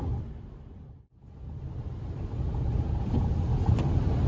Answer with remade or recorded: recorded